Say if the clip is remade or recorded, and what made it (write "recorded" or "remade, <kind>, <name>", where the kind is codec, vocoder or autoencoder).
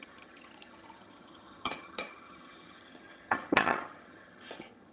remade, vocoder, HiFi-GAN